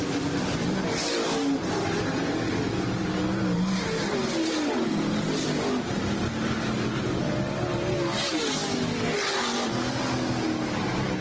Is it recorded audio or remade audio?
recorded